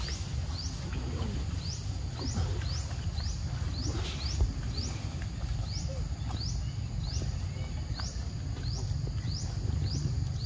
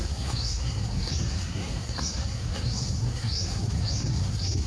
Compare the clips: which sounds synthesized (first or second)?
second